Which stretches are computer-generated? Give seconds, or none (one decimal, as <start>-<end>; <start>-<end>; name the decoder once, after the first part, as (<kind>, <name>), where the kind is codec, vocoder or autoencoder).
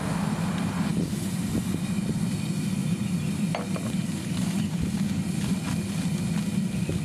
none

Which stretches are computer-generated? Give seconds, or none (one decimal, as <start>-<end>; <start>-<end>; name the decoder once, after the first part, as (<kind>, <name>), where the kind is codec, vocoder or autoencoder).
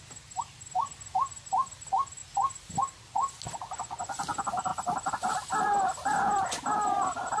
2.2-2.8 (vocoder, BigVGAN v2)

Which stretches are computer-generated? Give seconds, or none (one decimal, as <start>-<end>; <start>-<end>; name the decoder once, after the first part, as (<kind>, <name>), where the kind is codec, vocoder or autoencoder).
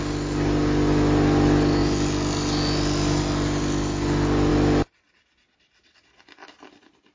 none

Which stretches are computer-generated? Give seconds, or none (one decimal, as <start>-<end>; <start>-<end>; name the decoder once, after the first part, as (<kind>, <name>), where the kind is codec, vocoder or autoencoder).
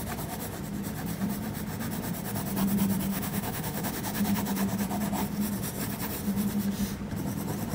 3.1-3.9 (autoencoder, DAC-VAE)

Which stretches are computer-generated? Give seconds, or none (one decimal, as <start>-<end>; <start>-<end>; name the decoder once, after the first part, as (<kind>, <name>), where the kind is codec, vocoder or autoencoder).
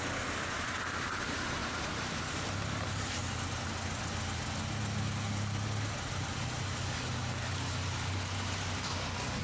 1.6-2.2 (vocoder, BigVGAN v2)